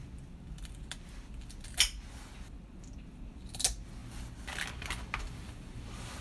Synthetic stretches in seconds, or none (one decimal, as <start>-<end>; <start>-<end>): none